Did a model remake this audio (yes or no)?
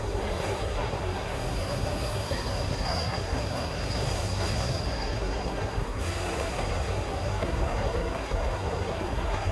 yes